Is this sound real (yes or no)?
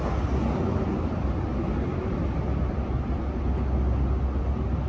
yes